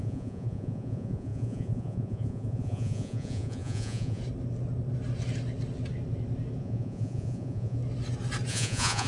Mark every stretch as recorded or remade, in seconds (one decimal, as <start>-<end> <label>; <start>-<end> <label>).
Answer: 0.0-4.2 remade; 4.2-6.6 recorded; 6.6-7.8 remade; 7.8-8.5 recorded; 8.5-9.1 remade